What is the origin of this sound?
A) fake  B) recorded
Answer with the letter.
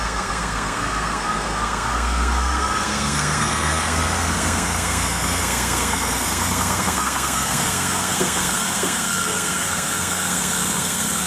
A